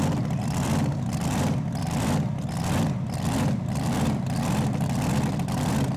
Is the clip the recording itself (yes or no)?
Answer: yes